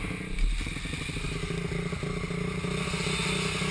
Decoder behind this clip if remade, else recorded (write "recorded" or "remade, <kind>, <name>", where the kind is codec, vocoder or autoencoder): recorded